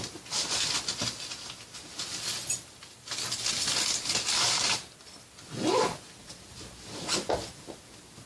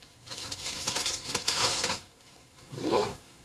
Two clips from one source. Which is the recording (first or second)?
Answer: first